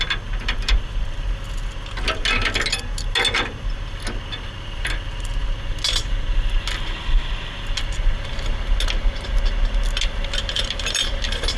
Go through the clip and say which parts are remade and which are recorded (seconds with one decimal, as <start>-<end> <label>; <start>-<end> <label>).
0.0-11.6 recorded